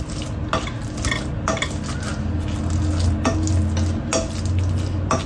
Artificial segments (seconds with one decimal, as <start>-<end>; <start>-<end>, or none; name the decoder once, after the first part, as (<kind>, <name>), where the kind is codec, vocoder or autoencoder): none